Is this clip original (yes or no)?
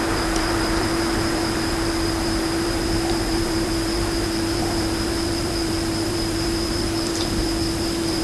no